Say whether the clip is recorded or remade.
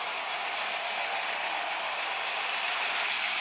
recorded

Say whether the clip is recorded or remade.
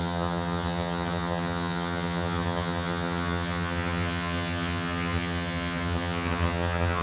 remade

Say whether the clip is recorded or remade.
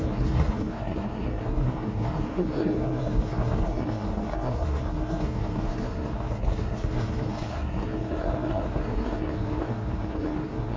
remade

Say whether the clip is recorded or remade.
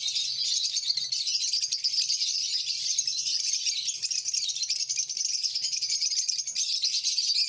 recorded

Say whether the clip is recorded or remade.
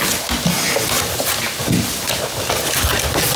recorded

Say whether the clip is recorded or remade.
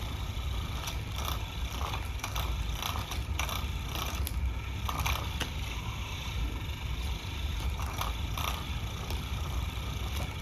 recorded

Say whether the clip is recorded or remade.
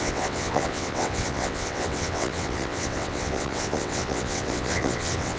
remade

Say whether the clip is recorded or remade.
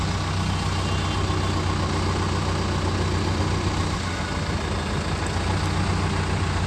recorded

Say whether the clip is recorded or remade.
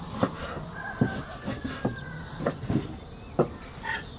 recorded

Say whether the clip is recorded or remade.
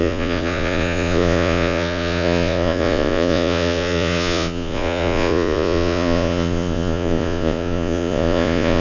remade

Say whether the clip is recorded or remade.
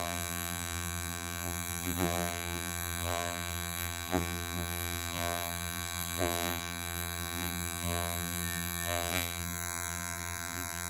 remade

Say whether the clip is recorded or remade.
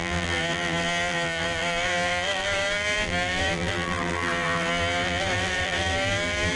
remade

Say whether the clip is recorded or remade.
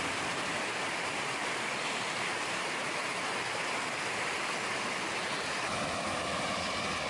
recorded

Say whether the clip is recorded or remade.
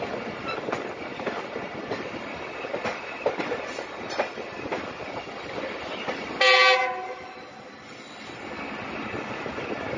recorded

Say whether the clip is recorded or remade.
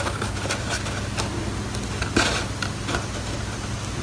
recorded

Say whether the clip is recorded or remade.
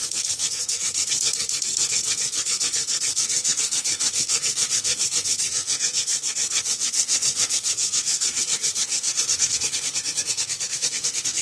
remade